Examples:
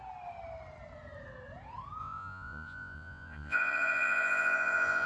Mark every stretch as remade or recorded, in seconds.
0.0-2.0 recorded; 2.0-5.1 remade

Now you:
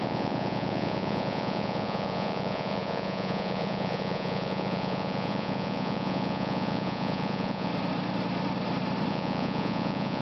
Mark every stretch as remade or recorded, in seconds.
0.0-7.7 remade; 7.7-9.1 recorded; 9.1-10.2 remade

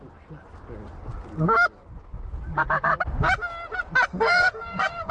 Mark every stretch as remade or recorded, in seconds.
0.0-4.1 recorded; 4.1-5.1 remade

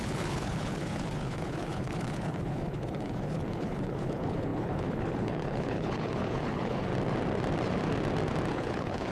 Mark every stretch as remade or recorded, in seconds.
0.0-6.9 remade; 6.9-8.5 recorded; 8.5-9.1 remade

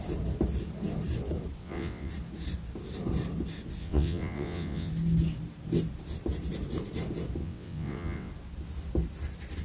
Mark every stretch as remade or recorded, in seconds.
0.0-1.6 recorded; 1.6-2.1 remade; 2.1-3.8 recorded; 3.8-4.9 remade; 4.9-7.4 recorded; 7.4-8.3 remade; 8.3-9.6 recorded

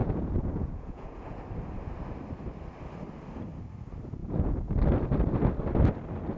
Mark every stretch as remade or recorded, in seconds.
0.0-1.4 remade; 1.4-4.2 recorded; 4.2-4.8 remade; 4.8-6.4 recorded

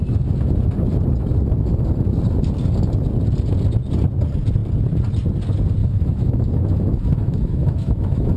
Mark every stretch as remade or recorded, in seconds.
0.0-5.8 recorded; 5.8-8.4 remade

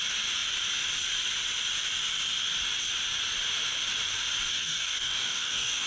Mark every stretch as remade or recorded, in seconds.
0.0-4.5 recorded; 4.5-5.9 remade